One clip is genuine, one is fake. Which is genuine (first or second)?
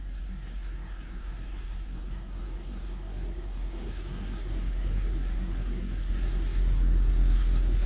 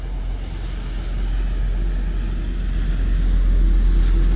second